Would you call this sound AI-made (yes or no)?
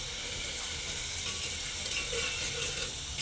no